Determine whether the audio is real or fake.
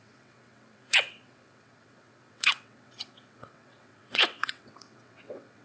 fake